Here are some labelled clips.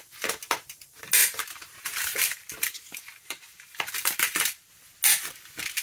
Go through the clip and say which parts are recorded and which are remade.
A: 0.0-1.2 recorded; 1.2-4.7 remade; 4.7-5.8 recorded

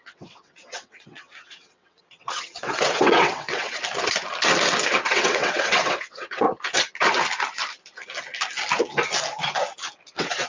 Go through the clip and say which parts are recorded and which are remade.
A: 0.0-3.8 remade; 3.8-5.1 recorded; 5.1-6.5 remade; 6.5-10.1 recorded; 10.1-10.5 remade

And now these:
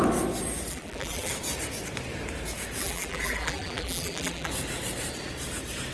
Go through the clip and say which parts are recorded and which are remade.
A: 0.0-0.7 recorded; 0.7-1.3 remade; 1.3-2.8 recorded; 2.8-4.5 remade; 4.5-5.9 recorded

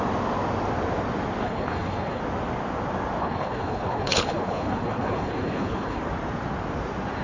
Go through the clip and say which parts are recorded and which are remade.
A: 0.0-1.4 recorded; 1.4-2.2 remade; 2.2-3.2 recorded; 3.2-6.0 remade; 6.0-7.2 recorded

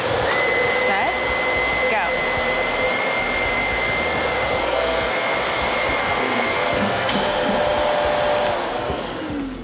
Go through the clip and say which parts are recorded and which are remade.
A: 0.0-4.6 recorded; 4.6-5.1 remade; 5.1-6.0 recorded; 6.0-7.1 remade; 7.1-8.6 recorded; 8.6-9.2 remade; 9.2-9.6 recorded

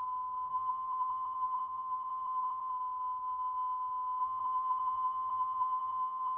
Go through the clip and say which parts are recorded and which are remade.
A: 0.0-0.5 recorded; 0.5-2.7 remade; 2.7-4.2 recorded; 4.2-6.4 remade